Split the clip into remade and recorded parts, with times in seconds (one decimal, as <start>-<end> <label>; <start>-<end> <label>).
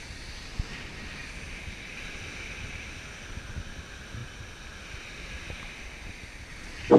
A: 0.0-7.0 recorded